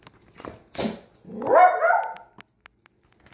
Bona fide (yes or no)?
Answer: yes